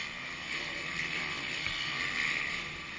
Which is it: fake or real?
real